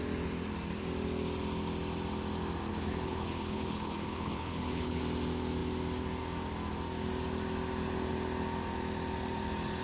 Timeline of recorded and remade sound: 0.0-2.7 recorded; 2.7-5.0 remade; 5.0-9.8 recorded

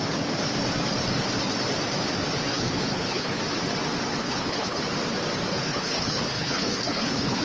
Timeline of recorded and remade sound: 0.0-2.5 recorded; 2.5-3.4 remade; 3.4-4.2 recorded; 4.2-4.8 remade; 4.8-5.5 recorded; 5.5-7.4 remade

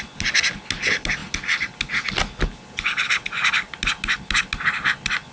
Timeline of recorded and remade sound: 0.0-5.3 recorded